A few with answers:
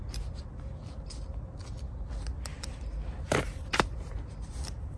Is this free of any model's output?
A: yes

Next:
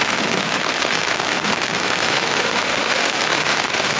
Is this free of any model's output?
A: no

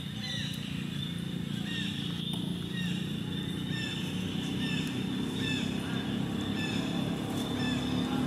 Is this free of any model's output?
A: yes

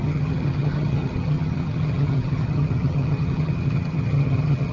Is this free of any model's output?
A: no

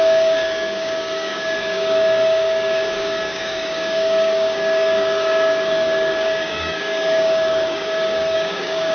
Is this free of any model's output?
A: no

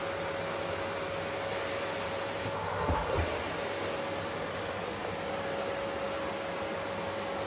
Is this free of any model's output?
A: yes